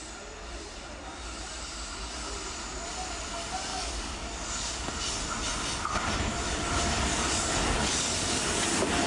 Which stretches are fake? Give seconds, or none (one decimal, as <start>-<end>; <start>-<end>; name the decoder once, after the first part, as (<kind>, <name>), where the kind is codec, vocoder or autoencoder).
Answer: 3.7-4.7 (codec, DAC); 7.1-8.6

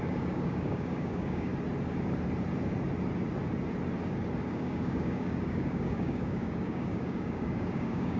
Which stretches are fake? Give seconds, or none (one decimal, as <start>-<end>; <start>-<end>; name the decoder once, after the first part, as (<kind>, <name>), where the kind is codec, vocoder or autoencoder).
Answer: 0.0-1.5 (codec, DAC); 4.4-8.2

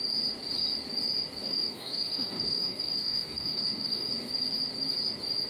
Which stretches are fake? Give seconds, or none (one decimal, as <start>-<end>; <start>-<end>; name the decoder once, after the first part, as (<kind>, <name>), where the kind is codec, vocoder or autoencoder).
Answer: 1.4-4.3 (codec, DAC)

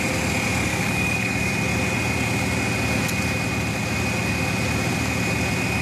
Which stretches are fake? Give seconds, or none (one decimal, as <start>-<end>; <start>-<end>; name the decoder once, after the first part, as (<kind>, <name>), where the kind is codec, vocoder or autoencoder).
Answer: 0.7-1.5 (codec, DAC)

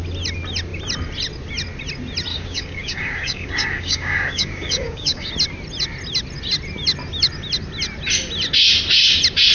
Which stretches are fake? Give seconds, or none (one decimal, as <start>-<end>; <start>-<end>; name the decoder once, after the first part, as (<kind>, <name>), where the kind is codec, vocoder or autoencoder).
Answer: 2.3-5.3 (codec, DAC)

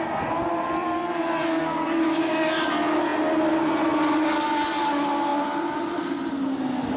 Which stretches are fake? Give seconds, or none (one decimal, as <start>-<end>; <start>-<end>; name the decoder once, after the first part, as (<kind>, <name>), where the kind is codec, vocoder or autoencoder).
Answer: 1.6-2.7 (codec, DAC)